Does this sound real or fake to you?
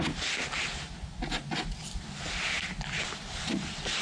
real